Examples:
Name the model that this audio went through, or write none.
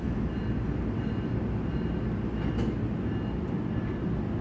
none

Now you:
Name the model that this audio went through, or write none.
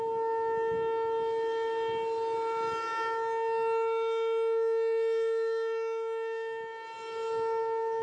none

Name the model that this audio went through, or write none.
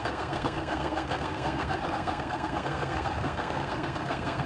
codec, SNAC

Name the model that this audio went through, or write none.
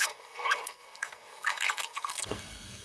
codec, SNAC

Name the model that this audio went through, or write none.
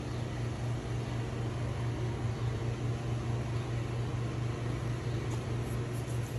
none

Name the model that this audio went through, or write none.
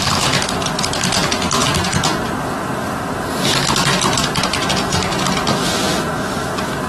none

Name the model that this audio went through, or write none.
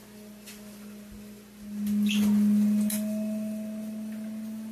none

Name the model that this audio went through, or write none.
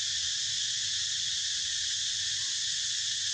none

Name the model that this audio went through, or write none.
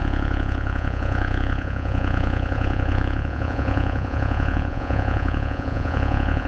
vocoder, Vocos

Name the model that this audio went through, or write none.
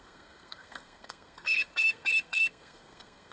codec, SNAC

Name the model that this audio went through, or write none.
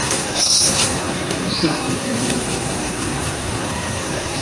codec, SNAC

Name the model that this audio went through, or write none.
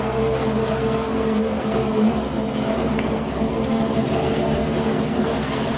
codec, SNAC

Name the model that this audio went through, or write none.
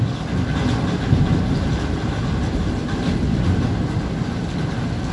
none